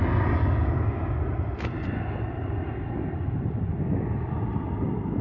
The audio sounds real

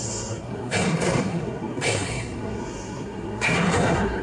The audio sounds fake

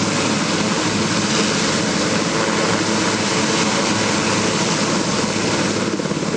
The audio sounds real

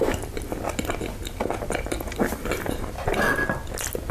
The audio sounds real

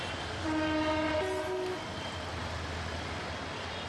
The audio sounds real